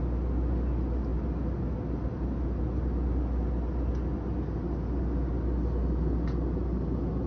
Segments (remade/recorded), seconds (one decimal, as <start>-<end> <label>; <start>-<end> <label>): 0.0-7.3 recorded